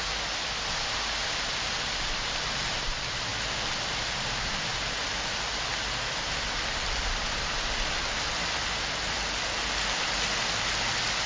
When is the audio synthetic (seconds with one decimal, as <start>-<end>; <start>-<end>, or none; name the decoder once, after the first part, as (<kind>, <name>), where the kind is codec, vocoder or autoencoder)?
none